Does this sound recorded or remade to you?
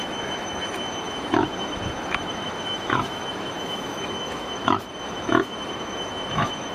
remade